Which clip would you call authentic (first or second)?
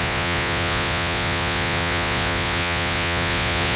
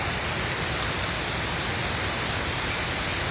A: second